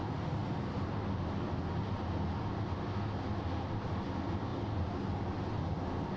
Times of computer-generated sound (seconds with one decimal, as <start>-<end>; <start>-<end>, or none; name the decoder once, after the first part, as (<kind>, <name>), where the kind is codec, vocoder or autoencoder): none